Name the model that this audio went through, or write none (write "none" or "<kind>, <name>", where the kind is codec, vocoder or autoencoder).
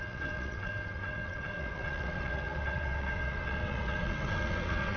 vocoder, WaveNeXt